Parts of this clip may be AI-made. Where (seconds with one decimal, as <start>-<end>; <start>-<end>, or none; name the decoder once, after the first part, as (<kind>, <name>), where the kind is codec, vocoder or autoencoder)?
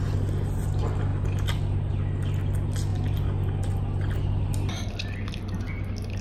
none